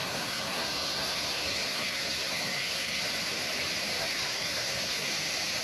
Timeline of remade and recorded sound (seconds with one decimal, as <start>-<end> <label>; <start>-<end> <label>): 0.0-3.0 remade; 3.0-4.0 recorded; 4.0-5.1 remade; 5.1-5.6 recorded